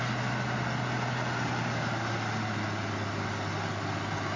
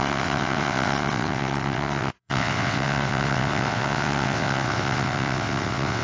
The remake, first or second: second